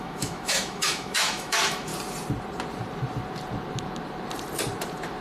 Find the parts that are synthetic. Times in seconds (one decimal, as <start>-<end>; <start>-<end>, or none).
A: 0.0-1.9